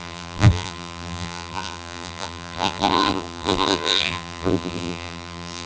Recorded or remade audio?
remade